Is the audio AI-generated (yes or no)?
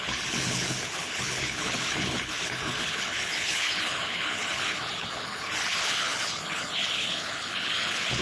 yes